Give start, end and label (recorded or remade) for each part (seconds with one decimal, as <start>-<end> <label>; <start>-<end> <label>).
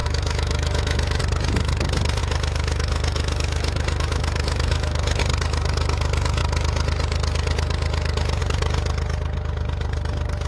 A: 0.0-1.2 remade; 1.2-2.2 recorded; 2.2-5.2 remade; 5.2-10.5 recorded